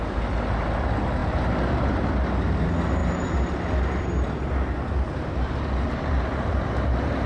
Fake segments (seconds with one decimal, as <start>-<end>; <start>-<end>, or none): none